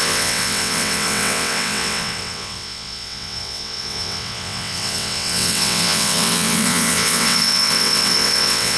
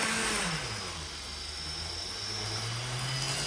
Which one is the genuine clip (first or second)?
second